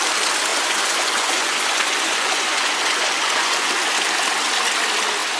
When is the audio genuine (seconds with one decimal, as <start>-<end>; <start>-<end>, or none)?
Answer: 0.0-0.5; 3.7-5.4